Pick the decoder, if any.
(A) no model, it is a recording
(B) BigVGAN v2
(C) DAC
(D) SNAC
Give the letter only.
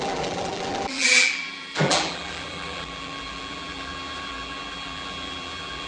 B